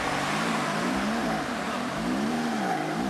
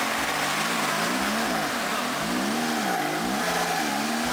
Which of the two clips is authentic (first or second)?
second